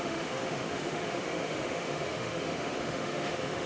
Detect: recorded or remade remade